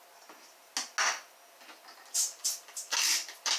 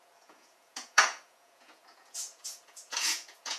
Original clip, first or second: first